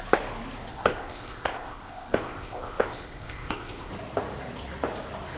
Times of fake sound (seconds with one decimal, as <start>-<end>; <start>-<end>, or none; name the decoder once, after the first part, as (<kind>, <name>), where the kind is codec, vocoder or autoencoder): 0.7-3.9 (codec, ZipCodec)